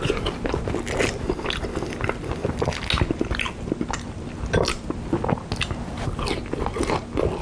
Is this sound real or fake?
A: real